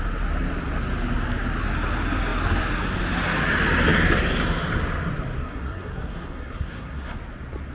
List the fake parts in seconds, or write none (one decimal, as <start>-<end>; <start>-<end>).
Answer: 5.4-7.2